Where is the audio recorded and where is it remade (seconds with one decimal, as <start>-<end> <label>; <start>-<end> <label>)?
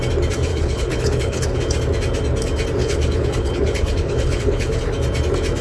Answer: 0.0-0.5 recorded; 0.5-1.6 remade; 1.6-2.8 recorded; 2.8-4.8 remade; 4.8-5.6 recorded